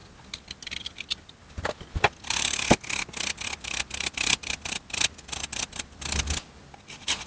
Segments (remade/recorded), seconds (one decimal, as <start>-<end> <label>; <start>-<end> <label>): 0.0-1.4 remade; 1.4-7.3 recorded

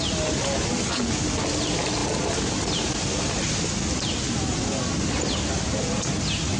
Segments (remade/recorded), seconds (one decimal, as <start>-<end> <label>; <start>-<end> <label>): 0.0-6.6 recorded

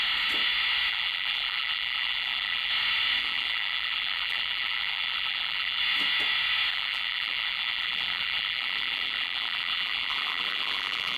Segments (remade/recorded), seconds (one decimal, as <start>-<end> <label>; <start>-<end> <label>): 0.0-0.9 recorded; 0.9-2.7 remade; 2.7-3.2 recorded; 3.2-5.8 remade; 5.8-6.7 recorded; 6.7-11.2 remade

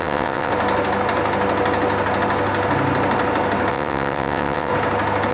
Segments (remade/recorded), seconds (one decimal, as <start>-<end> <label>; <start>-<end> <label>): 0.0-0.5 remade; 0.5-3.7 recorded; 3.7-4.7 remade; 4.7-5.3 recorded

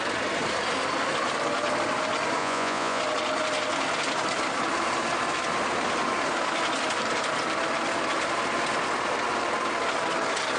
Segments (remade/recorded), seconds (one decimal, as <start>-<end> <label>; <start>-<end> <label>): 0.0-2.4 recorded; 2.4-3.0 remade; 3.0-10.6 recorded

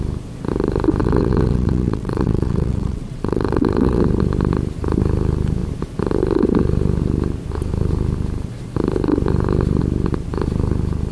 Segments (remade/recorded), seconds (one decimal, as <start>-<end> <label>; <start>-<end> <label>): 0.0-1.0 recorded; 1.0-4.0 remade; 4.0-11.1 recorded

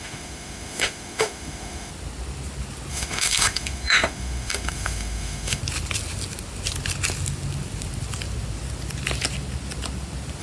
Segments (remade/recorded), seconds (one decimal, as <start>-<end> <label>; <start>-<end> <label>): 0.0-1.9 remade; 1.9-2.9 recorded; 2.9-5.6 remade; 5.6-10.4 recorded

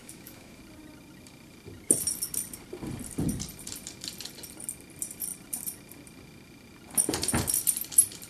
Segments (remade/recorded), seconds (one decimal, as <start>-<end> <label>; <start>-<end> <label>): 0.0-0.6 remade; 0.6-8.3 recorded